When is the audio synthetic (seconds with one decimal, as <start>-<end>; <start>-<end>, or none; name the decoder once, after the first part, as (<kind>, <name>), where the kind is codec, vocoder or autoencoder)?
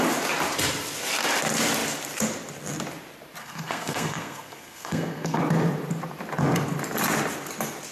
3.4-5.4 (codec, SNAC)